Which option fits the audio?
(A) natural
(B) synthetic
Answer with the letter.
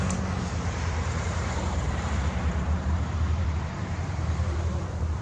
B